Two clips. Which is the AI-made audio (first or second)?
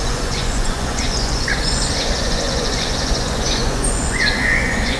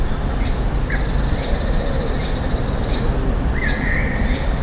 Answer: first